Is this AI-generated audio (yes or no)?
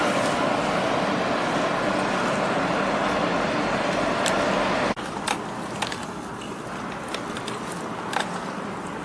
no